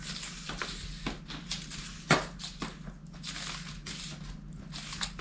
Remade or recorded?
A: recorded